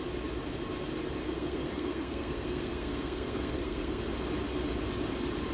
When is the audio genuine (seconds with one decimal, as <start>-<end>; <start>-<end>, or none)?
0.0-1.2; 4.0-5.5